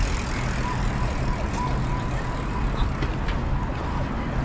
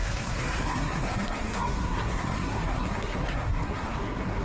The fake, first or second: second